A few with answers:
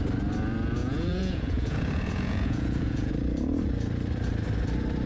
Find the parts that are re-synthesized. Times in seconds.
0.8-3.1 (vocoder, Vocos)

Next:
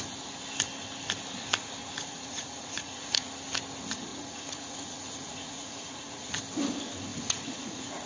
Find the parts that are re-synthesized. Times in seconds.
1.8-3.3 (vocoder, Vocos); 4.1-6.4; 7.1-8.1

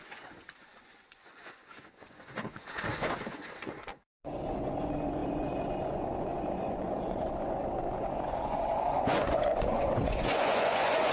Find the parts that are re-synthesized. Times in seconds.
0.0-11.1 (vocoder, Vocos)